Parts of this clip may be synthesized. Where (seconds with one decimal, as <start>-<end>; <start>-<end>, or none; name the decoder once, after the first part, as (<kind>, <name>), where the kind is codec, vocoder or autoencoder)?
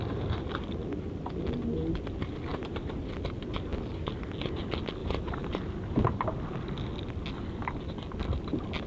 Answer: 2.5-3.1 (vocoder, BigVGAN v2); 5.0-6.2